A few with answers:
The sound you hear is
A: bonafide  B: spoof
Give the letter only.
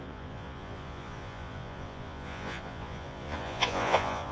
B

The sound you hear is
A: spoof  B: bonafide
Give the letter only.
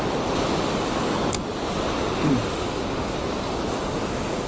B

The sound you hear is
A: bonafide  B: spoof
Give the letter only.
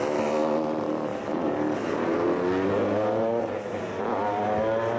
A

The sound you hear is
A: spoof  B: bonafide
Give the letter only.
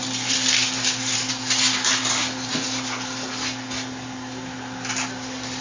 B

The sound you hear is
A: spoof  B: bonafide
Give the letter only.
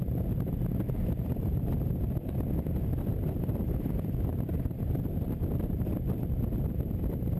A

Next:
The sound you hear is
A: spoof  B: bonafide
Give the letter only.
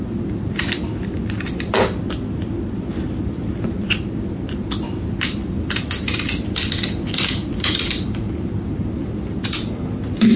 B